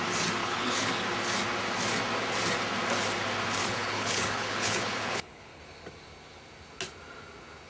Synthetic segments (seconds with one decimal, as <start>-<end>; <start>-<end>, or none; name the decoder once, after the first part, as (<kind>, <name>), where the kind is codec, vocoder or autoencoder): 0.4-1.0 (codec, HILCodec); 3.6-5.6